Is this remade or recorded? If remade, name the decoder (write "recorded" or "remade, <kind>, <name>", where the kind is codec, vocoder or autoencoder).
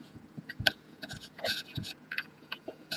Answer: remade, vocoder, Vocos